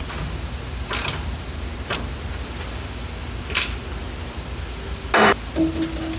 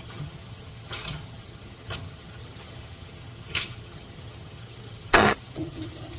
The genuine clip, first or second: first